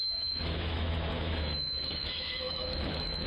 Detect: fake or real fake